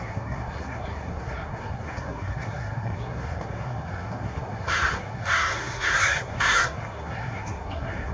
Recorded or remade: remade